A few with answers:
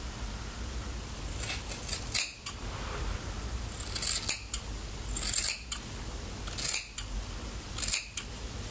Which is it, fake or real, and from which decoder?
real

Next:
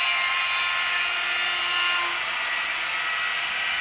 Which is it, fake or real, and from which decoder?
real